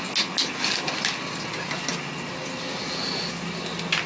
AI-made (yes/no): no